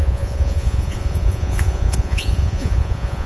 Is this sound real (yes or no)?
no